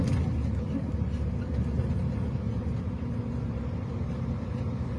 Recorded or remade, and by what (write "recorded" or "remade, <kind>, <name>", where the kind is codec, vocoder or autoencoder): recorded